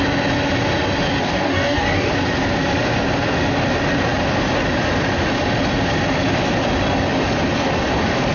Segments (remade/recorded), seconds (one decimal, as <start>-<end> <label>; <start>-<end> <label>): 0.0-1.2 recorded; 1.2-2.1 remade; 2.1-8.3 recorded